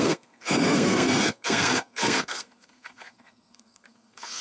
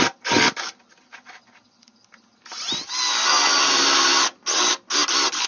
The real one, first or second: second